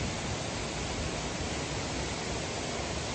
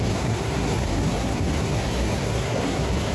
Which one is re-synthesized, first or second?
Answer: second